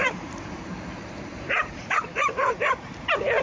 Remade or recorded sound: remade